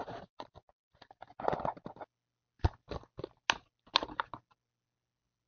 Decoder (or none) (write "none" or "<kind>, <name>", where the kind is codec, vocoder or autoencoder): none